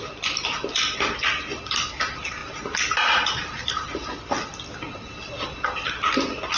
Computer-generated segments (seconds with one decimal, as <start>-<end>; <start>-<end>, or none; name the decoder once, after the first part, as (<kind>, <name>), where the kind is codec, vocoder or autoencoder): none